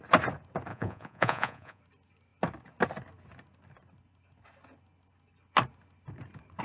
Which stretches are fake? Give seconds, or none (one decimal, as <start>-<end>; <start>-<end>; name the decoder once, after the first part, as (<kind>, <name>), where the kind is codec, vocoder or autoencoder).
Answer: 0.7-1.8 (vocoder, Vocos)

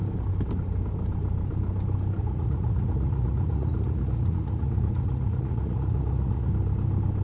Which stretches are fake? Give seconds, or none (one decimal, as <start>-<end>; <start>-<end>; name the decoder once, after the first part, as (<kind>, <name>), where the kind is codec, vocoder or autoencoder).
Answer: 2.2-6.5 (vocoder, Vocos)

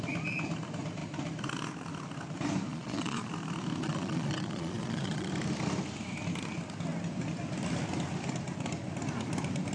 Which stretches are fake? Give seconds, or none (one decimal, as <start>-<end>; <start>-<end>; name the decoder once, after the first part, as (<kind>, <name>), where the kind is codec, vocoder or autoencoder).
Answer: 2.7-3.3 (vocoder, Vocos); 3.8-5.3

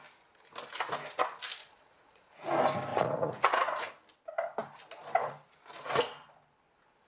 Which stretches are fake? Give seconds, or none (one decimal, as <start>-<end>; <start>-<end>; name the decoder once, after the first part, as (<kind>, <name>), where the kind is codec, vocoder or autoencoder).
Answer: 1.6-2.5 (vocoder, Vocos); 2.9-3.9

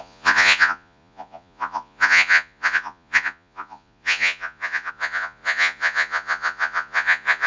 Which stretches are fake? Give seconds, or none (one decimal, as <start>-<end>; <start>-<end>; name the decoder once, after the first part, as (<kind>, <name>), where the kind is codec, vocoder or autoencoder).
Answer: 0.0-7.5 (vocoder, Vocos)

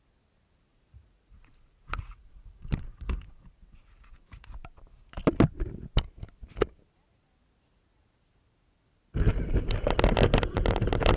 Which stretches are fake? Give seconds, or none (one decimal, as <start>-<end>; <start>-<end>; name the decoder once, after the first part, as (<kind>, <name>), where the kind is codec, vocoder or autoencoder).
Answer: 0.7-4.8 (vocoder, Vocos)

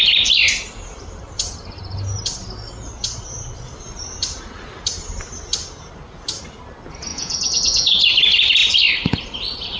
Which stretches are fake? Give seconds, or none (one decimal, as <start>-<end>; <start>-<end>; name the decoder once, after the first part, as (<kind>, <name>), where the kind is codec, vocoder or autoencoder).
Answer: 7.1-8.0 (vocoder, Vocos)

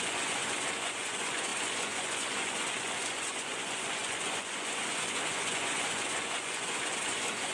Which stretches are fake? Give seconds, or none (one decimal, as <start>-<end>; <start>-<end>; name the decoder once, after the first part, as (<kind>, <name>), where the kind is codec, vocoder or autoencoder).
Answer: 0.0-7.5 (vocoder, Vocos)